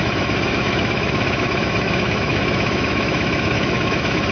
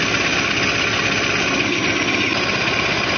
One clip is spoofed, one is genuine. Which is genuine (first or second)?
second